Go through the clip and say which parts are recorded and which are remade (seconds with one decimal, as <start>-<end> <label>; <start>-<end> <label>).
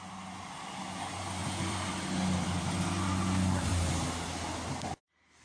0.0-1.4 recorded; 1.4-1.9 remade; 1.9-5.4 recorded